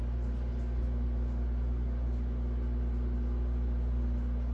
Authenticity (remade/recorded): recorded